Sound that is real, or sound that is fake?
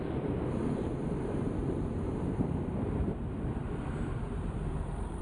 fake